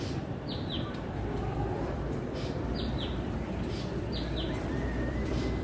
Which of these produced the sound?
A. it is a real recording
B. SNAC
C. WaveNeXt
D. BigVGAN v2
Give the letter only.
D